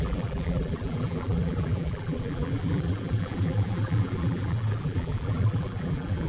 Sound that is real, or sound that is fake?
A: fake